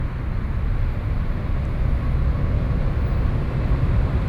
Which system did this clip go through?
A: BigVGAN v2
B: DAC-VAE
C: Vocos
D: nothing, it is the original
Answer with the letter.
D